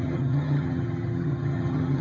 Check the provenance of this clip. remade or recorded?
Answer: remade